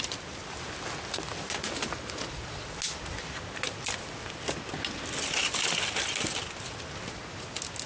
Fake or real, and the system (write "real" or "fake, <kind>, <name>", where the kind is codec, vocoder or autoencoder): real